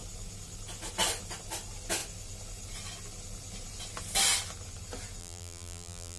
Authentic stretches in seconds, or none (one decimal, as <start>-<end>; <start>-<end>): 0.0-5.2